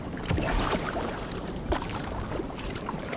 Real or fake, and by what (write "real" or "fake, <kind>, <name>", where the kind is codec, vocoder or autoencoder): fake, vocoder, BigVGAN v2